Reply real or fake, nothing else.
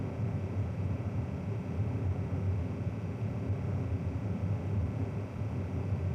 fake